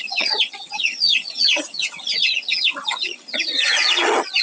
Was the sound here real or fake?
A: fake